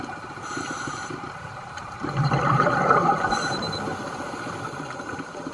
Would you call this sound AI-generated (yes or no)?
yes